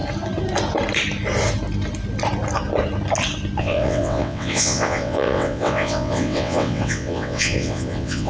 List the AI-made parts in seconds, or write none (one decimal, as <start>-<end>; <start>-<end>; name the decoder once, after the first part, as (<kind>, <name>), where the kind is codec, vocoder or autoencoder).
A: 3.6-8.3 (vocoder, WaveNeXt)